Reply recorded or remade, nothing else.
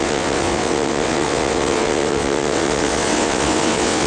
remade